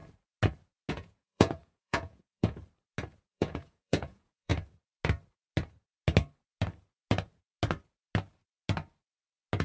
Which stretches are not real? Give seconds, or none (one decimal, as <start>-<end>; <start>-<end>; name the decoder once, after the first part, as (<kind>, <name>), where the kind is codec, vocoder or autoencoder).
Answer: 0.9-2.6 (vocoder, Vocos); 3.3-4.5